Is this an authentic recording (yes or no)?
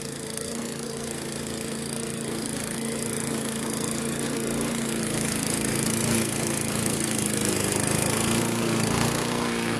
no